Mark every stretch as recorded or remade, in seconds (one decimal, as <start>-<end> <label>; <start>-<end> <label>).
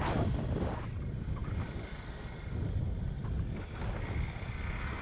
0.0-5.0 recorded